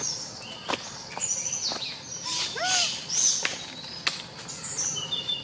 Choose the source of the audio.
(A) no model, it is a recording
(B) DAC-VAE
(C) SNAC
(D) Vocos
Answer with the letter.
A